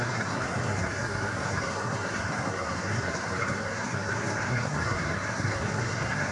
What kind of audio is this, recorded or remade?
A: remade